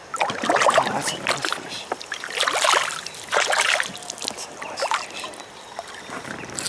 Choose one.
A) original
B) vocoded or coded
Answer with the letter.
A